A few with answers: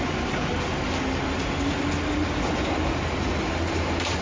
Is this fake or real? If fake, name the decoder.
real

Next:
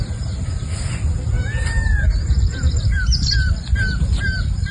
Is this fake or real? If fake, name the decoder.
real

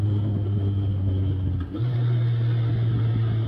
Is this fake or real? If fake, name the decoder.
real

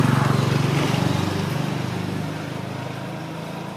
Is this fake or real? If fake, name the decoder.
real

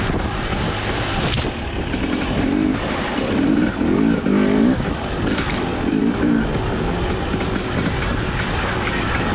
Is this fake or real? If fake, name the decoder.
real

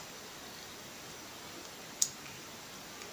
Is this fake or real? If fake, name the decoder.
real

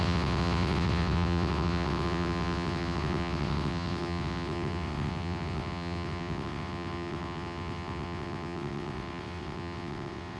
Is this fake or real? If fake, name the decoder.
fake, vocoder, WaveNeXt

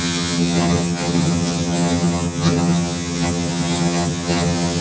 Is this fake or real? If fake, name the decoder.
fake, vocoder, HiFi-GAN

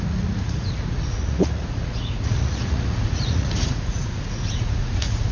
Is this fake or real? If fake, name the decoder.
fake, vocoder, Vocos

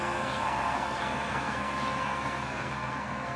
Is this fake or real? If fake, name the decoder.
fake, codec, SNAC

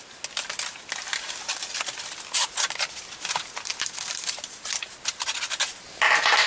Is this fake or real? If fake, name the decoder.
real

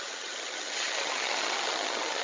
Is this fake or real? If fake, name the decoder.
fake, vocoder, HiFi-GAN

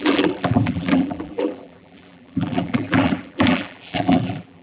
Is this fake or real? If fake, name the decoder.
fake, vocoder, BigVGAN v2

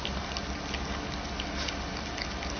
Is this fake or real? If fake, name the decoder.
real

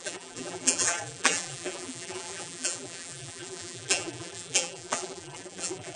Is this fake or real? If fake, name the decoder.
fake, vocoder, BigVGAN v2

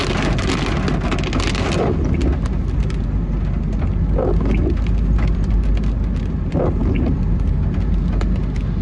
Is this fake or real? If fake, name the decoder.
real